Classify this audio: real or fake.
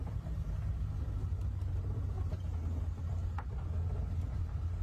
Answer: real